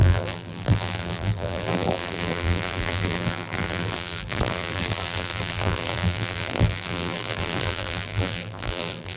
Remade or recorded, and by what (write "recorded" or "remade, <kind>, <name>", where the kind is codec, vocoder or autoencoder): remade, vocoder, BigVGAN v2